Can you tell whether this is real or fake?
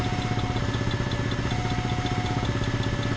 real